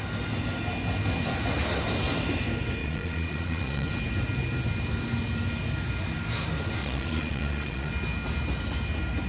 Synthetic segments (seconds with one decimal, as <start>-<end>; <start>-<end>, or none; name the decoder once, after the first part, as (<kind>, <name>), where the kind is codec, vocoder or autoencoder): 2.8-3.9 (vocoder, Vocos); 6.8-7.9